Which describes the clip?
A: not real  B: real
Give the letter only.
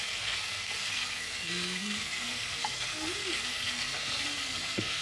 A